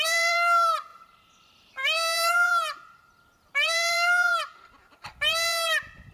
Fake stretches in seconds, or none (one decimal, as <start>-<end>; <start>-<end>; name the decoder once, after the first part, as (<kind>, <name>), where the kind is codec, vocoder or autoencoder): 0.0-6.1 (vocoder, BigVGAN v2)